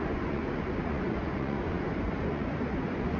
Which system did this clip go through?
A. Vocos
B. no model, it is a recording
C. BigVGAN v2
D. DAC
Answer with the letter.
A